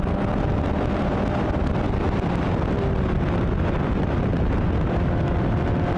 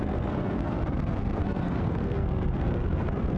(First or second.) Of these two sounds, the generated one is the second